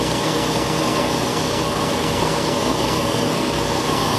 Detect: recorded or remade remade